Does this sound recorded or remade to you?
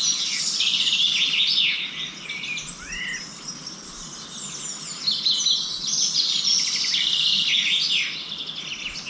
recorded